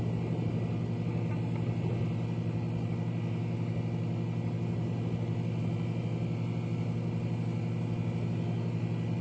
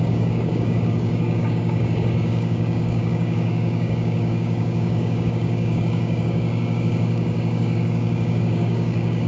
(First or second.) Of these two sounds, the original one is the first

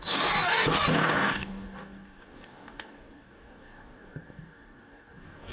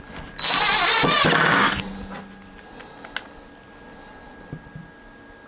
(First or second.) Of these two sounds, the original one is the second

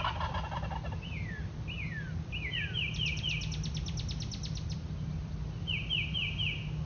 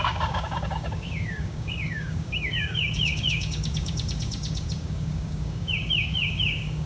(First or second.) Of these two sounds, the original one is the first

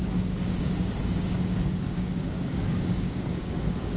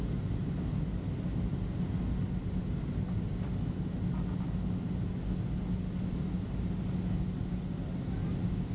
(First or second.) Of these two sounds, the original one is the second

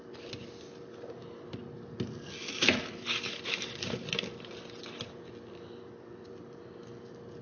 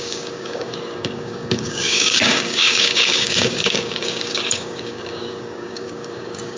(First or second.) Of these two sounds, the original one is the first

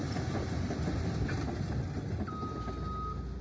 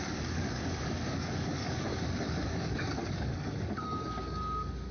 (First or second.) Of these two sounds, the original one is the first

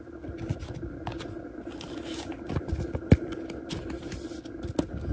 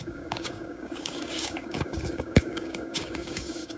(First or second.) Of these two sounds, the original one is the first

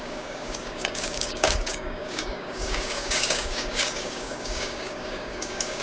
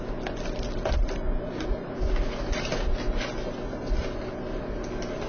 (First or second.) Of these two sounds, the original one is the second